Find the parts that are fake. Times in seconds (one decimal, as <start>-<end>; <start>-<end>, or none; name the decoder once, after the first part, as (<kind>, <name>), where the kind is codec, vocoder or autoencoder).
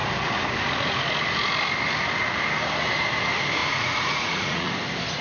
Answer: 3.6-4.7 (vocoder, Vocos)